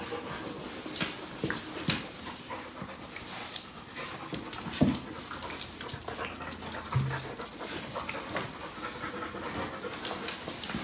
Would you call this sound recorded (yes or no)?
yes